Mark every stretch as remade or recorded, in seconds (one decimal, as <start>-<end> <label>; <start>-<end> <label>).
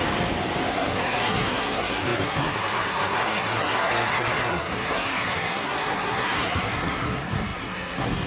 0.0-0.7 recorded; 0.7-8.3 remade